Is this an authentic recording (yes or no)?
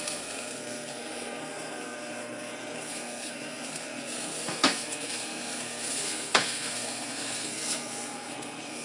no